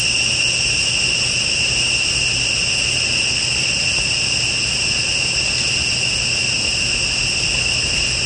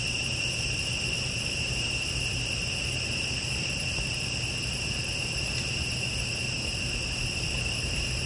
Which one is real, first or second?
first